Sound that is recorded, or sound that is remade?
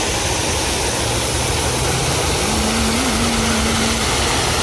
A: recorded